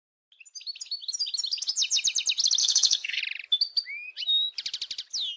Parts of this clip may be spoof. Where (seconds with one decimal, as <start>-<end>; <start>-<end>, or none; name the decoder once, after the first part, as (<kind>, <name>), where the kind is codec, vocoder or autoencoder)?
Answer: 2.6-3.2 (codec, SNAC)